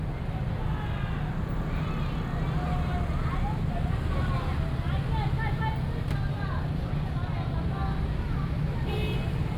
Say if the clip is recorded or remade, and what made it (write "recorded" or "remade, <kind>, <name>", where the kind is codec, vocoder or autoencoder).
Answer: recorded